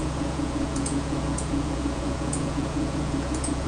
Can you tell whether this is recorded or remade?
remade